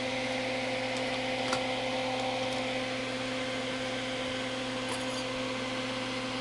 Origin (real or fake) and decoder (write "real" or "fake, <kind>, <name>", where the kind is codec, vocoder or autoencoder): real